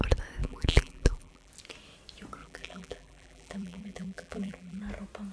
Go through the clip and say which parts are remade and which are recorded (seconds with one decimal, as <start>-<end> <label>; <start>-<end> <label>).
0.0-0.4 recorded; 0.4-1.5 remade; 1.5-2.4 recorded; 2.4-4.8 remade; 4.8-5.3 recorded